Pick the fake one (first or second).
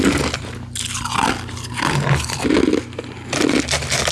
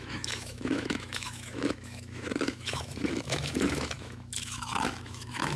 second